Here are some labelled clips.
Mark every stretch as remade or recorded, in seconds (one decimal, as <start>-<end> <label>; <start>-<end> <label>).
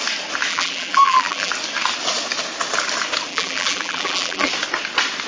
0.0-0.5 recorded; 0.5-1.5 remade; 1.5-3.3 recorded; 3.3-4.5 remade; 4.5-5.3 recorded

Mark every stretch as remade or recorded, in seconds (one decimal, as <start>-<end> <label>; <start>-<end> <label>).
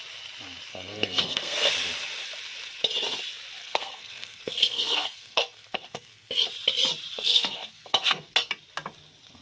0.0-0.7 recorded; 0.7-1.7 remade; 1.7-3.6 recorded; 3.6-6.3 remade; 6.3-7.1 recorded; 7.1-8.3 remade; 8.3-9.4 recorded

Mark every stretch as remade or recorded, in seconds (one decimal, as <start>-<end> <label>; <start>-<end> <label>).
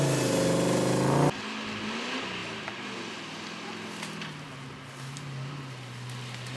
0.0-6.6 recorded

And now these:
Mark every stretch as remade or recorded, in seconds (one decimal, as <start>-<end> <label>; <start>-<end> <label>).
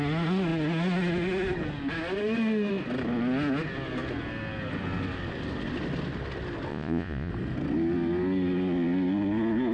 0.0-6.7 recorded; 6.7-7.3 remade; 7.3-9.7 recorded